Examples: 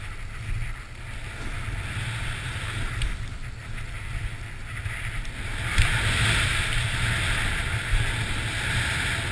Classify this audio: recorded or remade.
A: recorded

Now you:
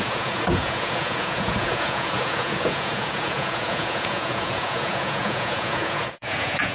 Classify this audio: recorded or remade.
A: remade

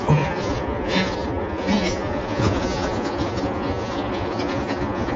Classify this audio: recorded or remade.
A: remade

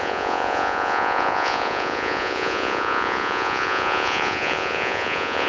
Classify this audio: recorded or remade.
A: remade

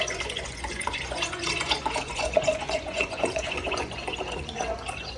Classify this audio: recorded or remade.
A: remade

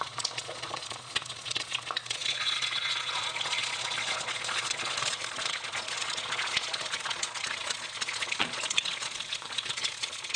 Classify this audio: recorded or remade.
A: remade